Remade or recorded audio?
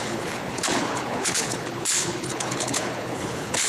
remade